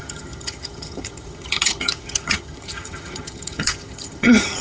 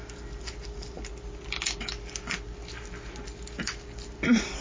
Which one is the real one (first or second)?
second